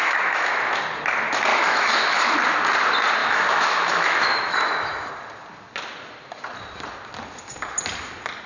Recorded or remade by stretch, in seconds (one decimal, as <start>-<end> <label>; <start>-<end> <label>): 0.0-0.8 remade; 0.8-1.5 recorded; 1.5-2.3 remade; 2.3-3.2 recorded; 3.2-5.1 remade; 5.1-8.5 recorded